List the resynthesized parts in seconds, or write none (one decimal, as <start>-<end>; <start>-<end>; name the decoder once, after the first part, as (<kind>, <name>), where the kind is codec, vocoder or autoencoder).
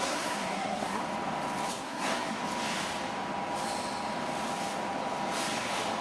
0.0-1.0 (codec, SNAC); 1.7-2.4